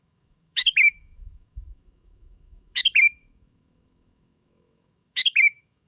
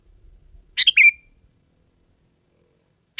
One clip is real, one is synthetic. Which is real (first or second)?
second